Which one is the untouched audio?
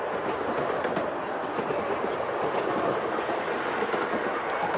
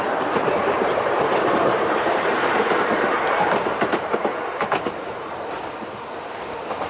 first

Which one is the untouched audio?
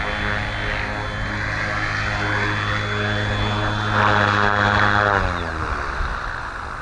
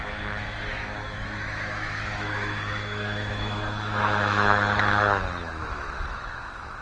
first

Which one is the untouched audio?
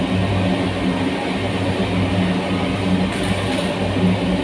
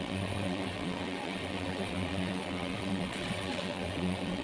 first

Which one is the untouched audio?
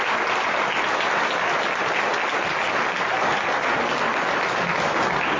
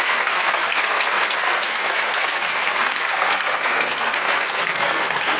first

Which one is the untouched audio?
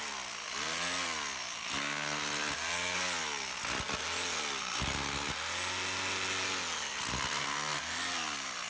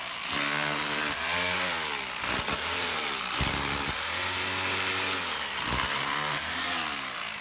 first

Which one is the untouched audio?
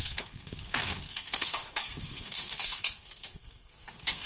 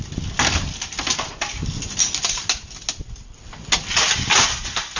second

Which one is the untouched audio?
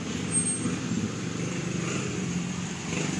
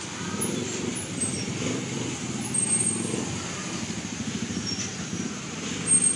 first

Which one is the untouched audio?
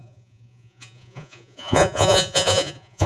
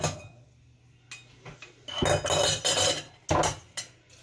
second